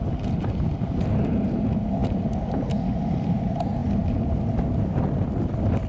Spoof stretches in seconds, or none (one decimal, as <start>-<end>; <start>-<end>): none